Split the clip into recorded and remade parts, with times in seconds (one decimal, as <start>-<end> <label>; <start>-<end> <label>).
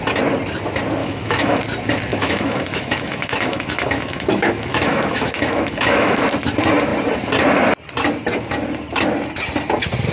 0.0-1.0 recorded; 1.0-1.6 remade; 1.6-2.1 recorded; 2.1-6.2 remade; 6.2-10.1 recorded